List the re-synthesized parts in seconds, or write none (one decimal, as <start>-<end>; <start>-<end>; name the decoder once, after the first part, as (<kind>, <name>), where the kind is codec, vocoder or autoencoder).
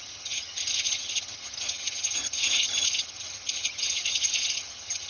0.0-5.1 (vocoder, HiFi-GAN)